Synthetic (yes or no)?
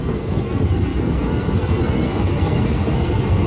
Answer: yes